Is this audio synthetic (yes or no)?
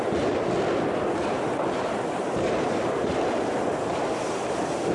no